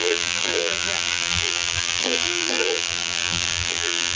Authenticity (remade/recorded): remade